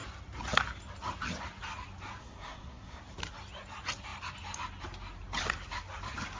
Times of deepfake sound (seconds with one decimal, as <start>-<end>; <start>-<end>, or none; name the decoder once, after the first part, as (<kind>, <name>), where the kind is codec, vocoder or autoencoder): 2.2-3.0 (codec, SNAC)